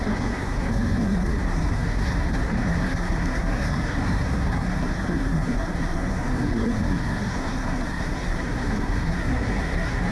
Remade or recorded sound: remade